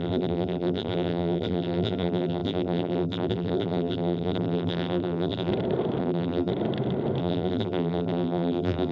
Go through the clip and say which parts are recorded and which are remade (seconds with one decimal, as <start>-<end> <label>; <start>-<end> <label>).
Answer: 0.0-5.5 remade; 5.5-6.0 recorded; 6.0-6.5 remade; 6.5-7.2 recorded; 7.2-8.9 remade